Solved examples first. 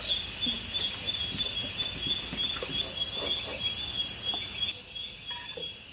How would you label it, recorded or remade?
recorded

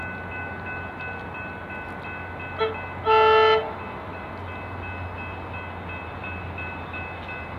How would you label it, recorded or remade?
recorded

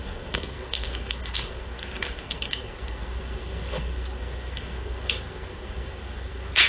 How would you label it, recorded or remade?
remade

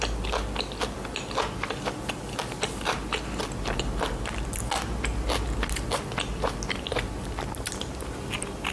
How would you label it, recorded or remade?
recorded